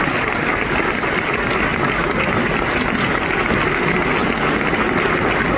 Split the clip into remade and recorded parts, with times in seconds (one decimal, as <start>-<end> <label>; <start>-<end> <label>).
0.0-5.6 recorded